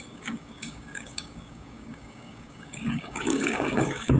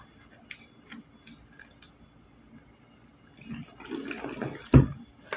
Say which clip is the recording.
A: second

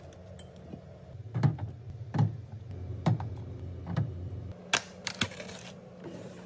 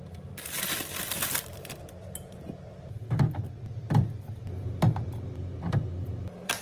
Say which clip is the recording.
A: first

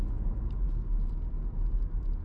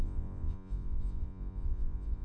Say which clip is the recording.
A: first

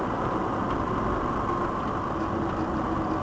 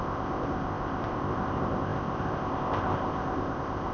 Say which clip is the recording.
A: first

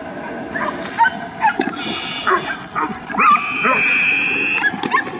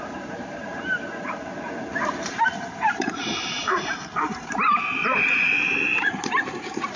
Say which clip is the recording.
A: first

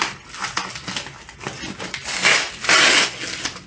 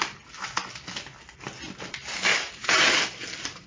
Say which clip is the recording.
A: first